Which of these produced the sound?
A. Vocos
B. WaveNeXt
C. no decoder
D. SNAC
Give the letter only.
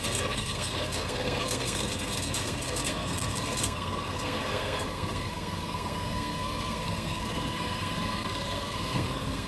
D